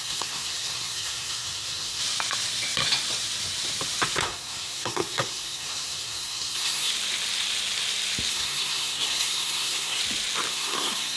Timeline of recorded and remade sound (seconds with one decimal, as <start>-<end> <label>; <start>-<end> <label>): 0.0-2.0 remade; 2.0-4.2 recorded; 4.2-6.9 remade; 6.9-8.3 recorded; 8.3-10.0 remade; 10.0-10.5 recorded; 10.5-11.2 remade